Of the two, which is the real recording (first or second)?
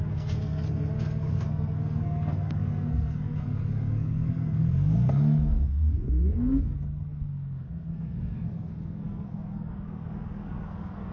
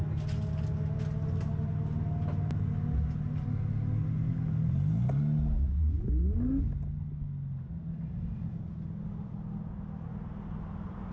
second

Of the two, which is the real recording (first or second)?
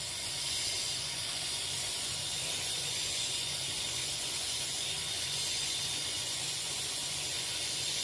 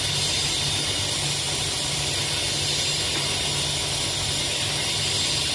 second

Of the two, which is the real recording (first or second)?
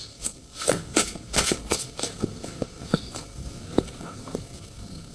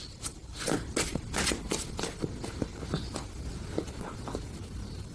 second